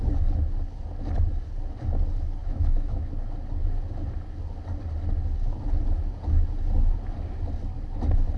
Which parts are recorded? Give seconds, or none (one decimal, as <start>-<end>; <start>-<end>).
0.0-2.4; 3.1-8.4